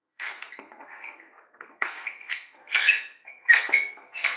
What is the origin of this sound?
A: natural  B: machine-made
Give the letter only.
B